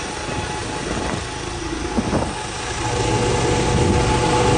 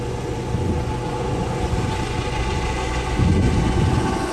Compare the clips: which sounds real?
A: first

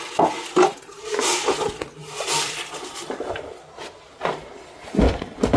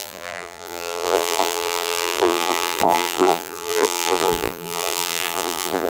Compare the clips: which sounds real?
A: first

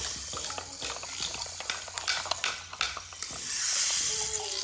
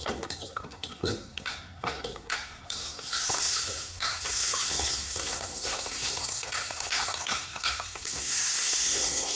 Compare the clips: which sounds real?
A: first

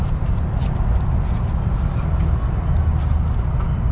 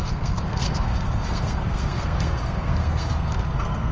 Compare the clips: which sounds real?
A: first